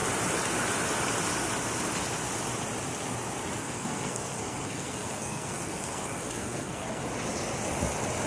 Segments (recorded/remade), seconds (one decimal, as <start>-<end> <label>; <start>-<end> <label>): 0.0-3.6 recorded; 3.6-7.0 remade; 7.0-8.3 recorded